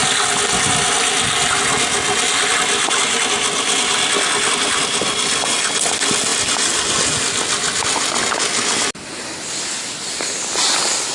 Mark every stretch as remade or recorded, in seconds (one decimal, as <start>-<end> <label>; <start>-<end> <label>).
0.0-11.1 recorded